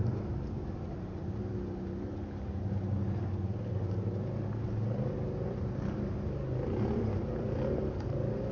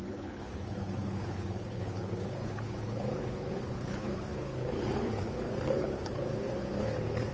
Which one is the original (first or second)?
first